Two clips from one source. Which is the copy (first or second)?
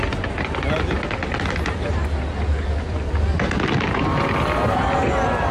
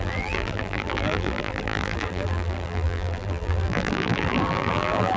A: second